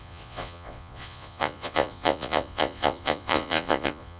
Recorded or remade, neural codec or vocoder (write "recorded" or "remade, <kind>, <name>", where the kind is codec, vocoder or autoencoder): remade, vocoder, Vocos